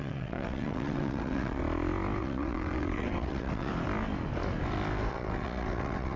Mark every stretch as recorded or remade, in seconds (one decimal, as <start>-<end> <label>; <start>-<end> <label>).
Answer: 0.0-1.6 remade; 1.6-2.2 recorded; 2.2-3.7 remade; 3.7-5.1 recorded; 5.1-6.2 remade